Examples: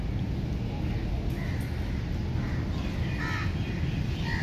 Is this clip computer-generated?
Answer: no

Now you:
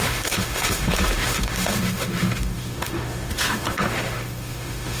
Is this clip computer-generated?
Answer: yes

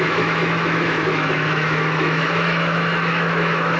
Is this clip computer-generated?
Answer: yes